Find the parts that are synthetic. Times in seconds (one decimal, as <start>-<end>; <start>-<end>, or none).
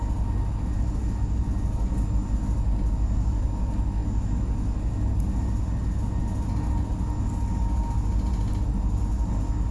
none